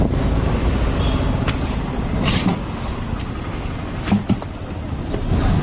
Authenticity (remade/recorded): recorded